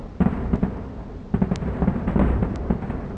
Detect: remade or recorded recorded